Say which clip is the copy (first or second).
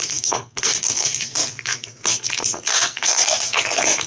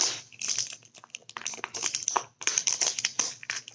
first